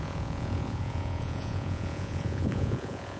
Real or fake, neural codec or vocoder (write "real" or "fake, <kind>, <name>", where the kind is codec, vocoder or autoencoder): fake, vocoder, Vocos